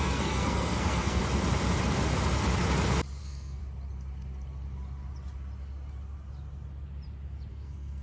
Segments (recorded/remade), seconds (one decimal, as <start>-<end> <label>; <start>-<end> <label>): 0.0-1.2 remade; 1.2-3.2 recorded; 3.2-3.6 remade; 3.6-7.5 recorded; 7.5-8.0 remade